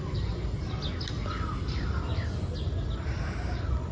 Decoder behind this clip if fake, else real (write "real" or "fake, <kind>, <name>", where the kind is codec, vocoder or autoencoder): real